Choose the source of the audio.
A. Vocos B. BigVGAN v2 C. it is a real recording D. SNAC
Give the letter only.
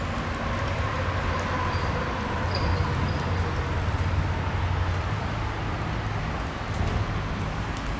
C